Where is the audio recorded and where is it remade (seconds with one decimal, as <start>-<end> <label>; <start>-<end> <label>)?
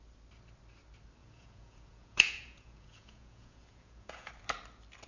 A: 0.0-1.2 recorded; 1.2-4.3 remade; 4.3-5.1 recorded